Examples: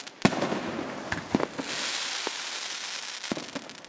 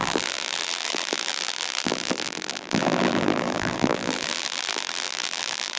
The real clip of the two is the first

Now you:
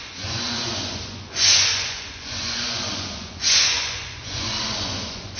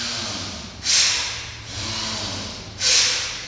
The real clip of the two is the second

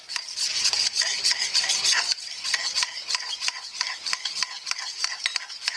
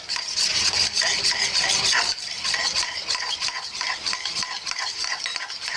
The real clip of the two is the first